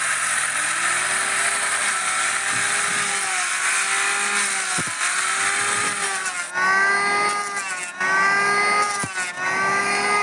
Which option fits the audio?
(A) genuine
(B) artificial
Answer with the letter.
A